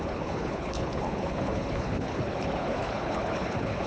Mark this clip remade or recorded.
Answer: remade